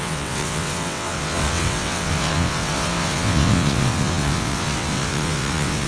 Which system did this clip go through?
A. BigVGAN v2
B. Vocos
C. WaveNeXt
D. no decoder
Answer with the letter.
C